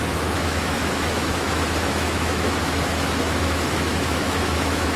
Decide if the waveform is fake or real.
fake